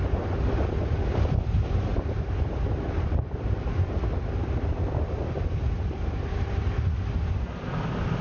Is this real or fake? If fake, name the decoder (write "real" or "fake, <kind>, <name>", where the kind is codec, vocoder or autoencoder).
real